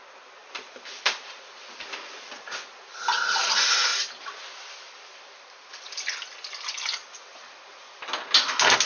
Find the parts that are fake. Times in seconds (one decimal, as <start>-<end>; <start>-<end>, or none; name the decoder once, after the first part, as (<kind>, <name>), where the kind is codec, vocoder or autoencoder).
0.4-2.9 (vocoder, BigVGAN v2); 3.9-5.7; 7.0-8.2